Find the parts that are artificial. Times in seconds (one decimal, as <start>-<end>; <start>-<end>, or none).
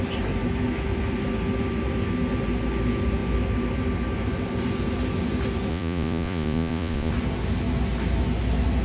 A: 5.7-7.1